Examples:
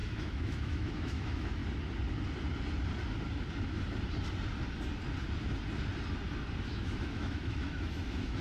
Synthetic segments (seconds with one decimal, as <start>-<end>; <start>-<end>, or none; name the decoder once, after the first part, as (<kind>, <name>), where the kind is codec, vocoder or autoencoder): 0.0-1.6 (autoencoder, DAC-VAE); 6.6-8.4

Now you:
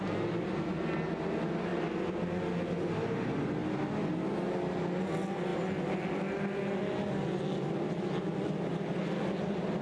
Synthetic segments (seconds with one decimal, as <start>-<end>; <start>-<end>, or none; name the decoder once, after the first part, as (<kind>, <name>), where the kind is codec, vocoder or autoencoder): none

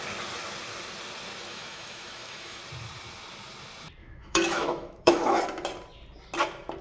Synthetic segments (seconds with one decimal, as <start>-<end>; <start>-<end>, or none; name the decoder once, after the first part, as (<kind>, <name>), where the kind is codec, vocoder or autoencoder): 1.5-2.6 (autoencoder, DAC-VAE); 4.0-5.4

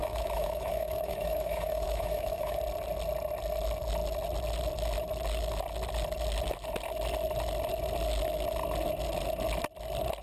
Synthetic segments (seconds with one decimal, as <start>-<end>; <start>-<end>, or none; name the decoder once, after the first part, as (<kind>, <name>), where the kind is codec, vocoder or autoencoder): 0.0-2.6 (autoencoder, DAC-VAE)

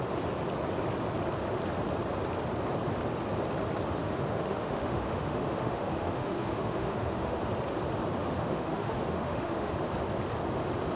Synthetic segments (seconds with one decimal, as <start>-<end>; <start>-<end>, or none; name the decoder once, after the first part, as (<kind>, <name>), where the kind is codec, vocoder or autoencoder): 4.0-7.4 (autoencoder, DAC-VAE); 8.2-9.7

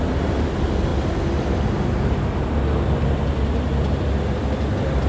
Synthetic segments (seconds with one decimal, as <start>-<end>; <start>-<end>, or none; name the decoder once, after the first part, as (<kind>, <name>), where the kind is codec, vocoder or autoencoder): none

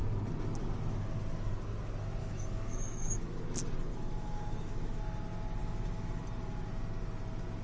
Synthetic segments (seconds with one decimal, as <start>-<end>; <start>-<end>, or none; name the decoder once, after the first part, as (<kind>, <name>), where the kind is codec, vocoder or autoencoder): 2.2-3.4 (autoencoder, DAC-VAE); 3.9-5.0; 5.6-6.2